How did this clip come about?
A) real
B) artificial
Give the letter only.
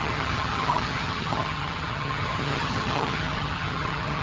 B